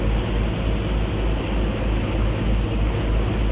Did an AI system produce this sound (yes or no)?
no